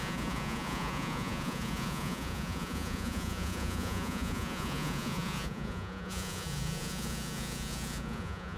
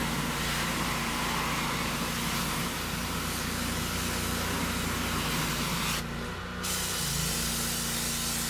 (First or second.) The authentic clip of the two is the second